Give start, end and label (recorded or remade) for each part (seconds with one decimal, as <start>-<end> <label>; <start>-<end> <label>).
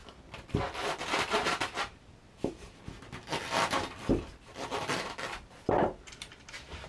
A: 0.0-4.1 recorded; 4.1-6.9 remade